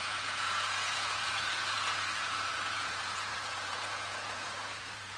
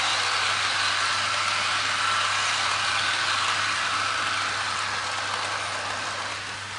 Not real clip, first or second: first